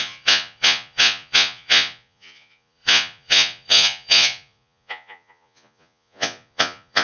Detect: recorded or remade remade